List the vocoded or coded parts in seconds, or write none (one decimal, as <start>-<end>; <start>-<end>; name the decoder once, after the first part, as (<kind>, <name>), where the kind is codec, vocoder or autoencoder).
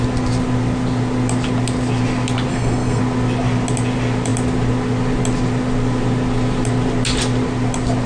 2.5-3.0 (codec, SNAC)